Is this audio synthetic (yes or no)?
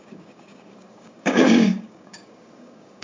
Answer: yes